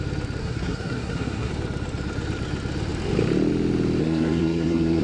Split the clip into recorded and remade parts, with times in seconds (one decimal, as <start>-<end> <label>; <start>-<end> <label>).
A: 0.0-0.4 recorded; 0.4-1.5 remade; 1.5-4.0 recorded; 4.0-5.0 remade